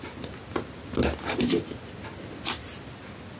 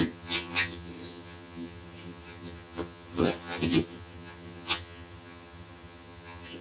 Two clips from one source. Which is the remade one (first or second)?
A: second